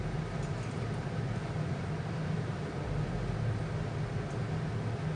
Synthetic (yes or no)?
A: no